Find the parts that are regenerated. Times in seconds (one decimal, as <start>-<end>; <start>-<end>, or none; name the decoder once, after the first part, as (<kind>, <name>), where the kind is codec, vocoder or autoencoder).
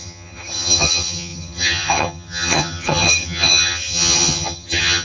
0.0-5.0 (vocoder, HiFi-GAN)